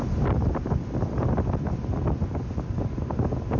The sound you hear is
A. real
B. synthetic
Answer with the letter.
A